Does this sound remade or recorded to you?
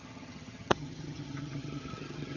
remade